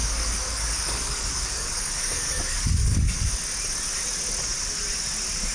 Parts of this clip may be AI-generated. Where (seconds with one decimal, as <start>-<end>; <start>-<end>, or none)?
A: 0.0-3.3